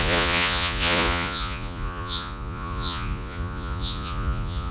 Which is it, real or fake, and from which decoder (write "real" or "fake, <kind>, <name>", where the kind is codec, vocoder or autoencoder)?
fake, vocoder, Vocos